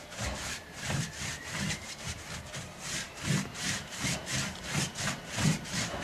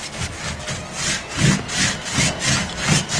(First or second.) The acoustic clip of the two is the second